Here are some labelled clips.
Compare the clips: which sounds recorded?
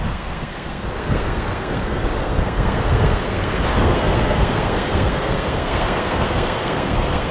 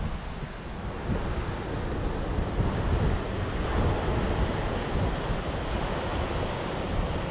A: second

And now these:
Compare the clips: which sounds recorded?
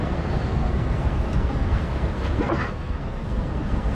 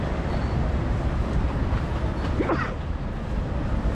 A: second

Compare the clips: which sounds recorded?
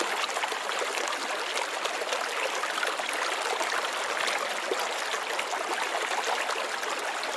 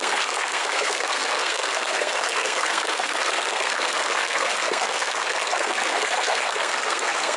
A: first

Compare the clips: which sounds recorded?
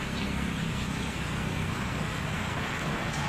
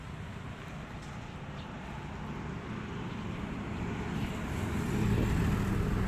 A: second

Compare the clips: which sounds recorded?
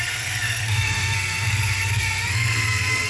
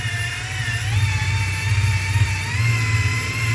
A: second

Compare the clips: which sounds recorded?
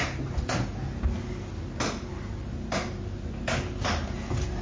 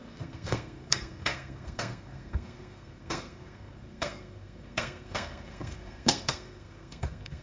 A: first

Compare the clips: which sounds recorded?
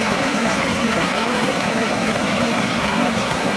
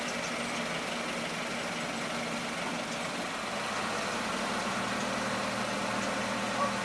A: second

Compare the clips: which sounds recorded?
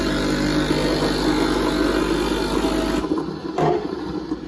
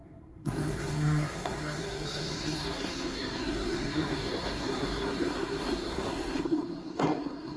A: first